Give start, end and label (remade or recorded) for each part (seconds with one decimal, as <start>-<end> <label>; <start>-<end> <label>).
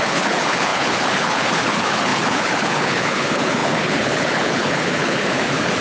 0.0-5.8 remade